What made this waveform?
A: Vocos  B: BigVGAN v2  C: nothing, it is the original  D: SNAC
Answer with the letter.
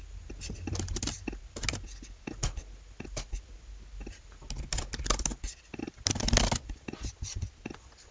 C